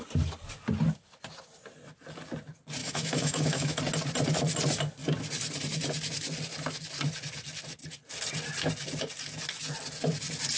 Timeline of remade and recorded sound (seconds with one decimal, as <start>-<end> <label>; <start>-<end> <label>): 0.0-2.8 recorded; 2.8-3.8 remade; 3.8-10.6 recorded